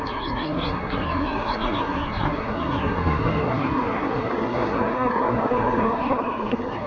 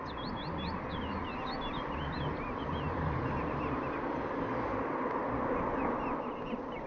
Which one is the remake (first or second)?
first